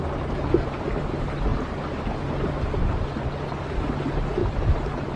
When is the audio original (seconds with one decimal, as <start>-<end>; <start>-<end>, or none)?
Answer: 0.0-5.2